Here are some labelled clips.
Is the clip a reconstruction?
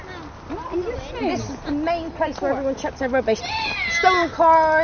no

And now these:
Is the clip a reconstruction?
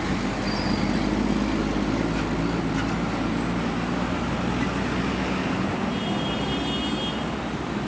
no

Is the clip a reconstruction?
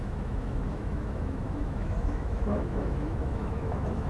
yes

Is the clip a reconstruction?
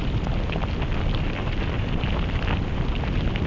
no